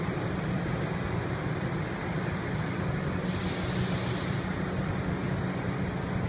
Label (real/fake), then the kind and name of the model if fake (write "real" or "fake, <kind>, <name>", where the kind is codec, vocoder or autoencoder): real